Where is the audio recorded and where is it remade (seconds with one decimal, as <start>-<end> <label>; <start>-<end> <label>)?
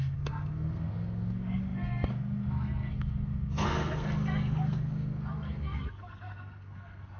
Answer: 0.0-7.2 remade